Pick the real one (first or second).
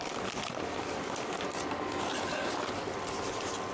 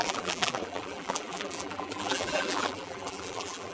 first